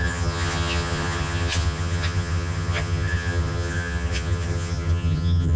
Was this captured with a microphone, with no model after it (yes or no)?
no